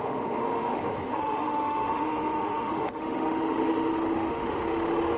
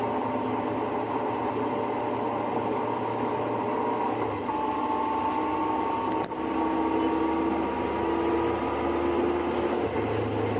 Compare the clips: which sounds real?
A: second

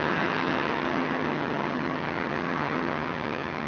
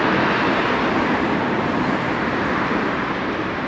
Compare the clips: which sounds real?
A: second